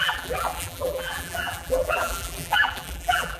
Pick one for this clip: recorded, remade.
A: remade